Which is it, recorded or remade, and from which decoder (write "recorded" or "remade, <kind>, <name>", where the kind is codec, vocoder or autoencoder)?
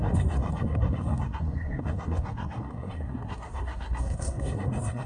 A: remade, codec, SNAC